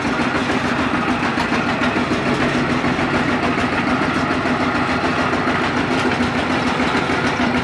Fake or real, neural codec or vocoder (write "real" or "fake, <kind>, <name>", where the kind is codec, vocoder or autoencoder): real